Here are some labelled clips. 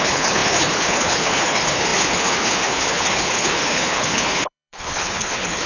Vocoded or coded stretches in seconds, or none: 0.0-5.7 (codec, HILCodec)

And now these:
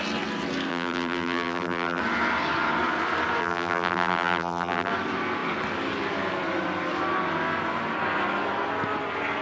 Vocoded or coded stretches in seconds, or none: 0.7-2.0 (vocoder, BigVGAN v2); 3.4-4.9

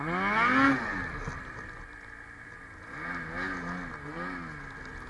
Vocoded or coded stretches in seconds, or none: none

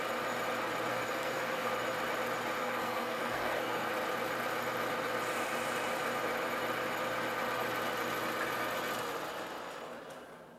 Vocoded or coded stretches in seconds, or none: 0.9-1.7 (codec, SNAC); 2.6-3.9

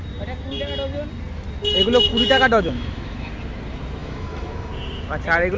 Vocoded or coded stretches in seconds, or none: 2.1-3.3 (autoencoder, DAC-VAE); 4.0-4.7

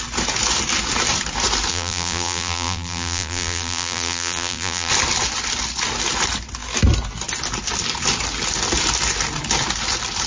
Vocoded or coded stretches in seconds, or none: 1.7-4.9 (vocoder, BigVGAN v2)